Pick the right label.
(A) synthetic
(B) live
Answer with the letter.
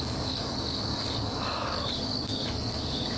A